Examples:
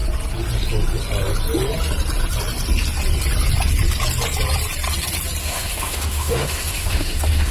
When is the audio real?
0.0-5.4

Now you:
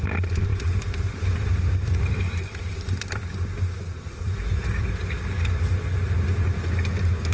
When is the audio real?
0.0-0.5; 4.9-7.3

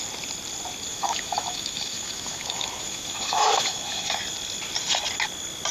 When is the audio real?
0.0-0.9; 4.2-5.7